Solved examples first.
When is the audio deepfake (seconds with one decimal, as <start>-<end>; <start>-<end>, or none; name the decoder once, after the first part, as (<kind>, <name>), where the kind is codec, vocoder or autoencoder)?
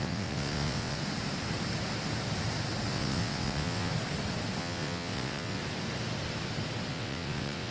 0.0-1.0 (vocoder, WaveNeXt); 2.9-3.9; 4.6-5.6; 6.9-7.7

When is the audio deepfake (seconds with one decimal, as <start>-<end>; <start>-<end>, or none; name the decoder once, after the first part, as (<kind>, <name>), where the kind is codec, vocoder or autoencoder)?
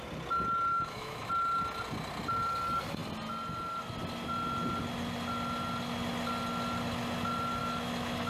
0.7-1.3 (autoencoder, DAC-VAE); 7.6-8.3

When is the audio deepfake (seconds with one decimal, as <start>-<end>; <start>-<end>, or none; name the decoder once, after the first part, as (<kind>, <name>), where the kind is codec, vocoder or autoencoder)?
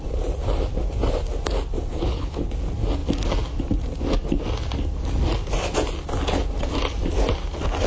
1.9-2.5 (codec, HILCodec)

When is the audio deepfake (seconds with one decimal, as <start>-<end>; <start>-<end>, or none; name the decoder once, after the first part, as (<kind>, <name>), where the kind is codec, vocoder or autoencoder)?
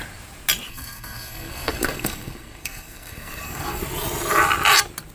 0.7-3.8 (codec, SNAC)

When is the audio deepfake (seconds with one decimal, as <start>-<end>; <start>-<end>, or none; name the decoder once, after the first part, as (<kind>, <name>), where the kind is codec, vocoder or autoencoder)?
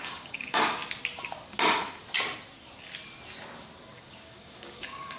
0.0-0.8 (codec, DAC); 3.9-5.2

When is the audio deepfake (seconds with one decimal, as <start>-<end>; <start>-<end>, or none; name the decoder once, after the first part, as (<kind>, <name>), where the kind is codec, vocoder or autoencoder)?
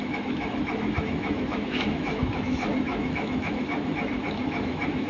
0.0-5.1 (autoencoder, DAC-VAE)